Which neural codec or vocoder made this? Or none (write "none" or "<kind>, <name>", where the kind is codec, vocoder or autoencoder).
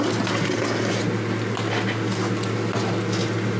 none